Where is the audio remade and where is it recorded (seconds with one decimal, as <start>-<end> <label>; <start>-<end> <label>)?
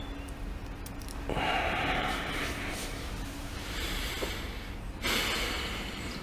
0.0-0.6 recorded; 0.6-4.3 remade; 4.3-6.2 recorded